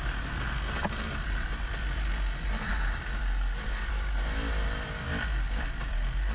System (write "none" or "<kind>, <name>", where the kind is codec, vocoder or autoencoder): none